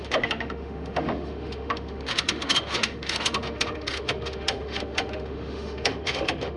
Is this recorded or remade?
remade